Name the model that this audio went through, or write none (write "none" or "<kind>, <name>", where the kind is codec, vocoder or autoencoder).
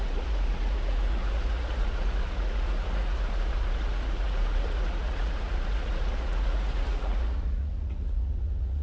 vocoder, Vocos